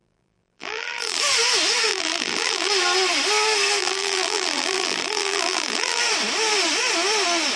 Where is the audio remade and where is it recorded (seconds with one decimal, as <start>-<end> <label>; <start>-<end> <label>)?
0.0-1.2 remade; 1.2-1.9 recorded; 1.9-2.7 remade; 2.7-3.8 recorded; 3.8-6.0 remade; 6.0-7.6 recorded